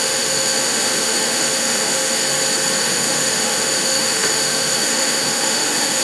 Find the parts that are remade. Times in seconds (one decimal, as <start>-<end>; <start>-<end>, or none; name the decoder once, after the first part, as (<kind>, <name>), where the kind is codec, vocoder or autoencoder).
0.0-2.2 (autoencoder, DAC-VAE); 2.8-6.0